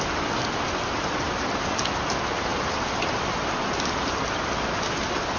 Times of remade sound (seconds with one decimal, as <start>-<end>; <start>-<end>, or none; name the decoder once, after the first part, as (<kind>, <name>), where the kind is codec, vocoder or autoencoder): none